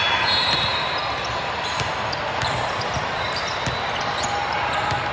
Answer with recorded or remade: recorded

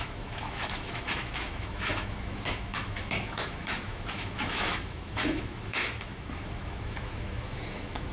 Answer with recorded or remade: remade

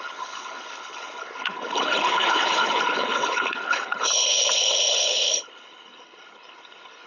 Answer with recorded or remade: remade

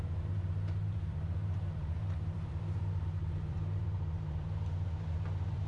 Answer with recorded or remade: remade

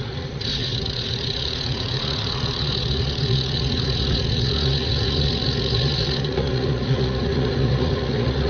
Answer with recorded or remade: remade